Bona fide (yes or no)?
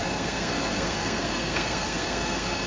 no